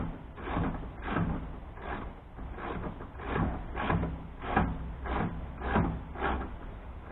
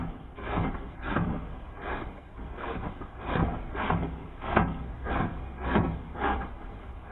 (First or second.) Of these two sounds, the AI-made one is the second